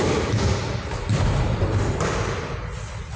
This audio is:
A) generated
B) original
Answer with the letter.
B